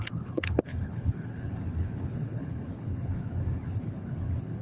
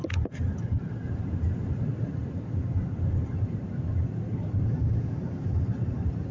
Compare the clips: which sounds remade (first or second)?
first